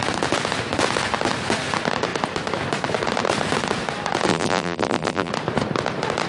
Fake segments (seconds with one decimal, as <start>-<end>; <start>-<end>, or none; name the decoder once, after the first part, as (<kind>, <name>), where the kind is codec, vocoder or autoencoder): 4.3-5.3 (vocoder, BigVGAN v2)